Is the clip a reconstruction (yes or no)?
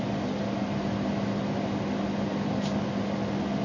no